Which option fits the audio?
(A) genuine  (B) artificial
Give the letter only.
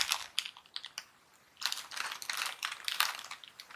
A